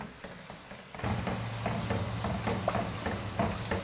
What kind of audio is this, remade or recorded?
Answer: recorded